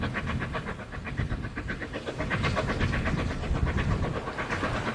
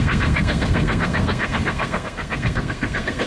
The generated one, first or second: second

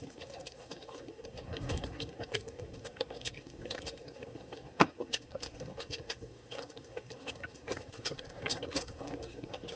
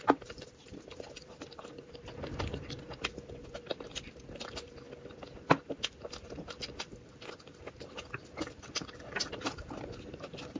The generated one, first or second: first